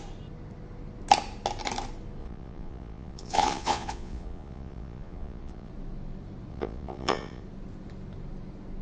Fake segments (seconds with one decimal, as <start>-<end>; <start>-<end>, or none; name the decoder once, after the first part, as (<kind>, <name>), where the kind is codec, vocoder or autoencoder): 2.2-5.7 (vocoder, Vocos); 6.5-7.4